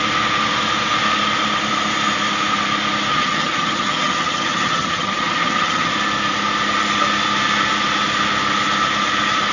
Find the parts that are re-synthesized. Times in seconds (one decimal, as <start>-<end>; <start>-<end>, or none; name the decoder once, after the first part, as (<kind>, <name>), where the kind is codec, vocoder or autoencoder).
3.1-5.9 (vocoder, HiFi-GAN)